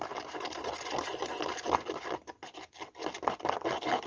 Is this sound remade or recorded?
recorded